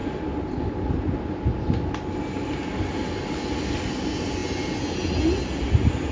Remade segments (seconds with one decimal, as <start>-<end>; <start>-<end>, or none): none